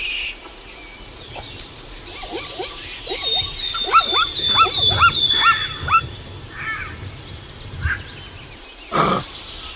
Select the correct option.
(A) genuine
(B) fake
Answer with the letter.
A